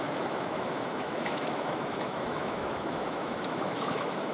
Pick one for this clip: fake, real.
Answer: fake